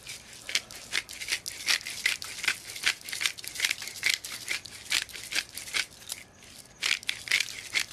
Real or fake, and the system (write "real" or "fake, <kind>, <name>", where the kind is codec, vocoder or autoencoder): real